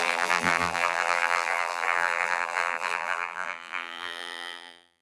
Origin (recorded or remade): remade